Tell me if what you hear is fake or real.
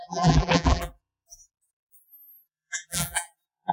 fake